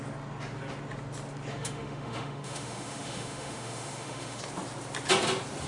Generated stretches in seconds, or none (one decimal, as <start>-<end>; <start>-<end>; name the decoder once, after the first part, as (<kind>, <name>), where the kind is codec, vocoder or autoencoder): 1.5-4.4 (autoencoder, DAC-VAE)